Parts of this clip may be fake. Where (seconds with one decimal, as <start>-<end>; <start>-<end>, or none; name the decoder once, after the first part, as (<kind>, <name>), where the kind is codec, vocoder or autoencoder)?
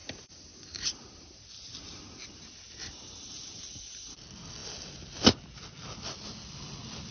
0.0-2.5 (vocoder, BigVGAN v2)